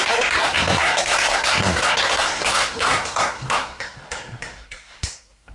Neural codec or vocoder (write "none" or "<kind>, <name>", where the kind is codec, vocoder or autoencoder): codec, SNAC